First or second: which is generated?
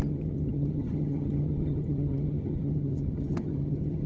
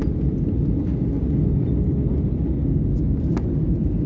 first